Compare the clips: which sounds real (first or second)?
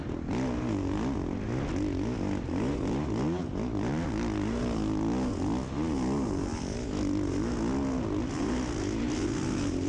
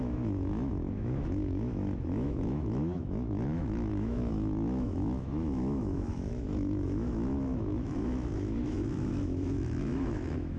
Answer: first